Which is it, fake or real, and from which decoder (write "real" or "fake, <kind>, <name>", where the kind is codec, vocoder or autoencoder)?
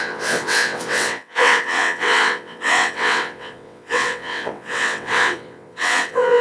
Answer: fake, vocoder, WaveNeXt